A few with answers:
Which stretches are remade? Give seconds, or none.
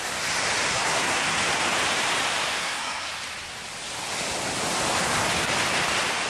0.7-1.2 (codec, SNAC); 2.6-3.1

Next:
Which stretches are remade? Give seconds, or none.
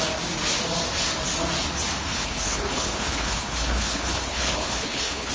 2.1-5.3 (codec, HILCodec)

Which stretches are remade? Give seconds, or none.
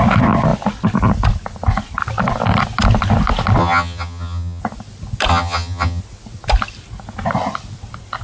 3.6-4.6 (vocoder, HiFi-GAN); 5.3-6.0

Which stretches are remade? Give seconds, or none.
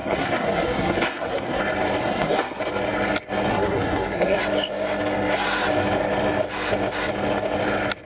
0.0-1.6 (codec, SNAC); 2.0-2.6; 3.5-4.4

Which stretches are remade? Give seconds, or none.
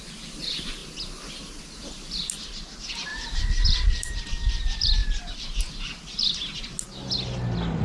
3.1-4.2 (vocoder, BigVGAN v2)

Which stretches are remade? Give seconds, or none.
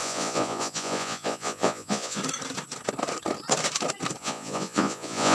0.0-2.2 (vocoder, Vocos); 4.2-5.3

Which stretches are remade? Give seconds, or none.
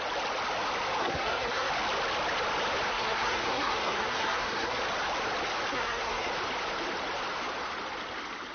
1.0-1.7 (codec, SNAC); 2.9-4.8; 5.7-6.3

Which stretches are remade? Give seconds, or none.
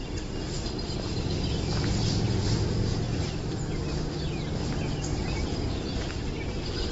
0.9-6.9 (vocoder, BigVGAN v2)